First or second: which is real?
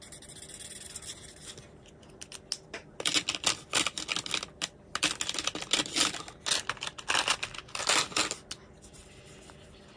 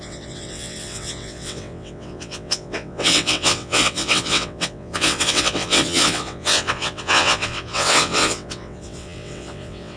first